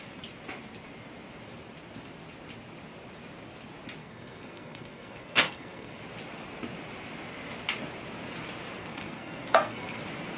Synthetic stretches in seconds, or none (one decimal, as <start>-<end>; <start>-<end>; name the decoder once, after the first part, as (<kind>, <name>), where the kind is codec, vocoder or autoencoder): 4.0-6.0 (codec, SNAC); 8.8-10.0